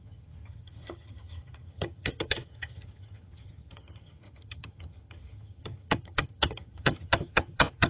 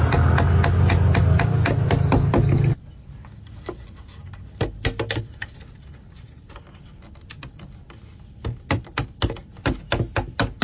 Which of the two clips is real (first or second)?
second